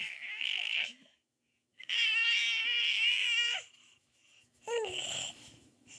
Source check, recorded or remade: remade